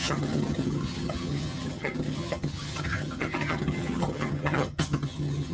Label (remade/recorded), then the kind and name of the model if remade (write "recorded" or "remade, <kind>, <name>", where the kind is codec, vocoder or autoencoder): remade, vocoder, HiFi-GAN